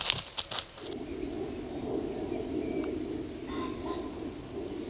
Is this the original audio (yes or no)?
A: yes